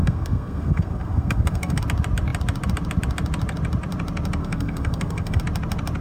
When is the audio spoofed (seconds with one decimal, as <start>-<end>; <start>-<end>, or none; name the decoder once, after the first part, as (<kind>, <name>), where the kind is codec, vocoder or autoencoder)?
0.0-1.8 (codec, SNAC); 4.4-5.4